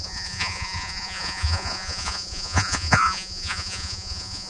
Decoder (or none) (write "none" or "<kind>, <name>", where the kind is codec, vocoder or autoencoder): vocoder, Vocos